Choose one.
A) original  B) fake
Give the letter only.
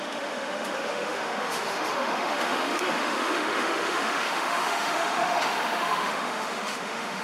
B